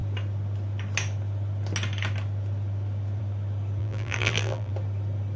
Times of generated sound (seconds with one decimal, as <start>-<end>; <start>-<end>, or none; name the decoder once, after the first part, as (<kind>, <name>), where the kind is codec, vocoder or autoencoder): 3.8-4.7 (vocoder, BigVGAN v2)